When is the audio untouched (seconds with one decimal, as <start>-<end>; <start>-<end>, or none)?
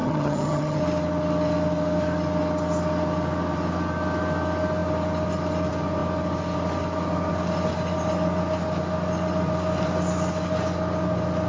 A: 0.8-11.5